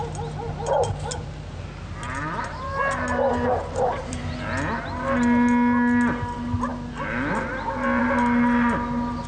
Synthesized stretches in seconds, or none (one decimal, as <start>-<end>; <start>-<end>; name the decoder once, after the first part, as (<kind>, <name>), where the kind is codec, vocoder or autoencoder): 3.3-4.3 (vocoder, BigVGAN v2)